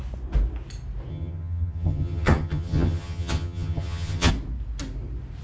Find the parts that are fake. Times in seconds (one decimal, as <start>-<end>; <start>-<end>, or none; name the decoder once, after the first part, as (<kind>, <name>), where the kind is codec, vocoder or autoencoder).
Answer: 1.1-4.3 (vocoder, HiFi-GAN)